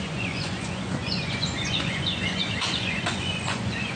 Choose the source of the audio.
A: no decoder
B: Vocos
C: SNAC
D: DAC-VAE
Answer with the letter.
B